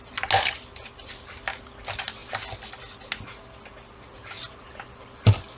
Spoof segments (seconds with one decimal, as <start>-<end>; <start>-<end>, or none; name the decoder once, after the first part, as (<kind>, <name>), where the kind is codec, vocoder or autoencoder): none